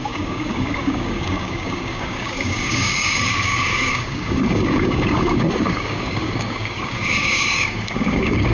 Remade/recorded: remade